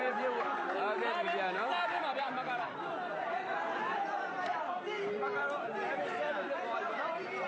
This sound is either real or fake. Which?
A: fake